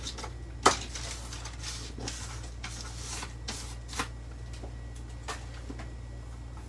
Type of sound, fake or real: real